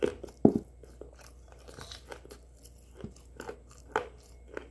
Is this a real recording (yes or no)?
yes